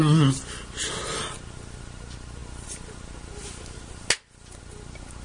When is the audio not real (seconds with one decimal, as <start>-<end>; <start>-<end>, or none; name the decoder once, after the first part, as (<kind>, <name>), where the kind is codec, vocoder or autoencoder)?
none